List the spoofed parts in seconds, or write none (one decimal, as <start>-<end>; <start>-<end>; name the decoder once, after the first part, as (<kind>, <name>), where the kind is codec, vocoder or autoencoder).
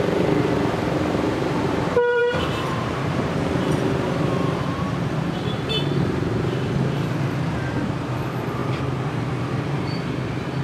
0.0-8.6 (vocoder, BigVGAN v2); 9.2-10.6